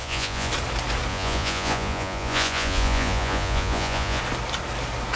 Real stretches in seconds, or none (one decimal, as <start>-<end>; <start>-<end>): 0.5-1.1; 4.2-5.2